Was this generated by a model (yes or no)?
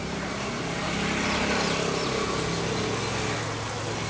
no